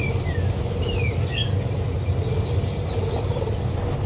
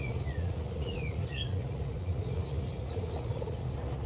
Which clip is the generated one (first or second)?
second